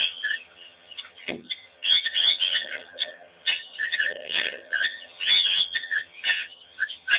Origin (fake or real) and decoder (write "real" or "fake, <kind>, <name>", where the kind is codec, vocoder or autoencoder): fake, vocoder, HiFi-GAN